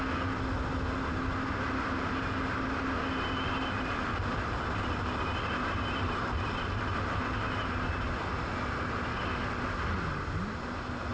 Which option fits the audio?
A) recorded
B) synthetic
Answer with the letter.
A